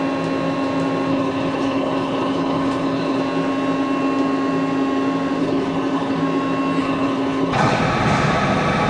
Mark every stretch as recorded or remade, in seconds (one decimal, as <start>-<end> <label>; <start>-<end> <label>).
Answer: 0.0-1.1 recorded; 1.1-3.2 remade; 3.2-5.4 recorded; 5.4-6.2 remade; 6.2-6.8 recorded; 6.8-7.8 remade; 7.8-8.9 recorded